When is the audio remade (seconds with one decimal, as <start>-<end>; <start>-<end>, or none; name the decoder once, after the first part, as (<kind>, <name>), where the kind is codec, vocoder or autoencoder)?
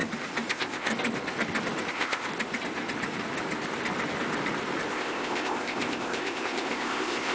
0.5-0.9 (codec, ZipCodec); 1.9-2.3; 4.9-7.3